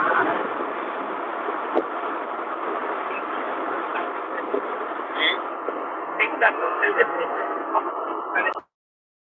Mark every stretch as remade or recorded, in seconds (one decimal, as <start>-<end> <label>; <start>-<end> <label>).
0.0-6.0 recorded; 6.0-7.9 remade; 7.9-9.2 recorded